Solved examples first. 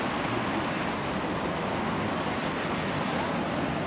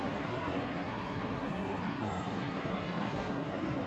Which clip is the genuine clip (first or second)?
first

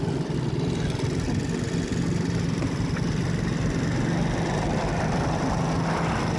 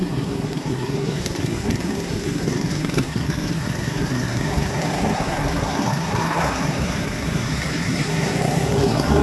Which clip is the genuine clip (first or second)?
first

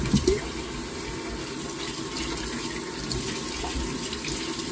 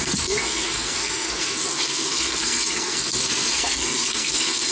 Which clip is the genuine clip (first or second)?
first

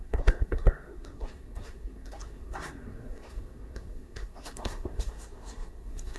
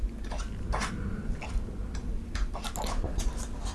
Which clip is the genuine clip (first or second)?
second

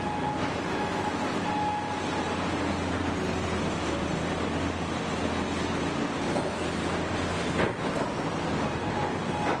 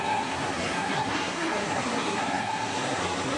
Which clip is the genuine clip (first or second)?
first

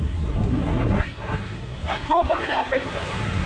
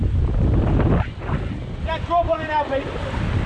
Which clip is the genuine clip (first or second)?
second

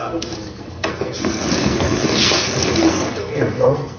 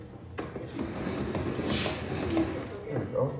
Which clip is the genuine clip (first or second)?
second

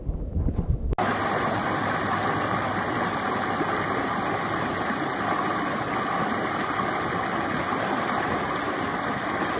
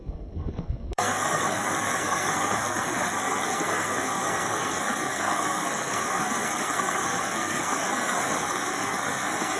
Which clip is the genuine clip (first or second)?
first